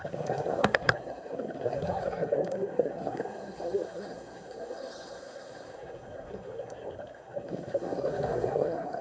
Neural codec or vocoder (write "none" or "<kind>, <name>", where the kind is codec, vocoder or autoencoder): codec, SNAC